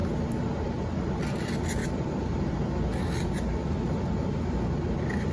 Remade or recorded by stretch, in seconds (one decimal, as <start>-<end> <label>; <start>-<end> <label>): 0.0-1.8 recorded; 1.8-2.5 remade; 2.5-5.3 recorded